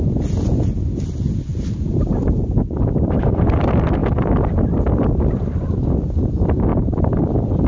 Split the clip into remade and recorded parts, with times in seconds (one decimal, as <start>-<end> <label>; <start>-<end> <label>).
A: 0.0-1.5 recorded; 1.5-3.6 remade; 3.6-6.7 recorded; 6.7-7.2 remade; 7.2-7.7 recorded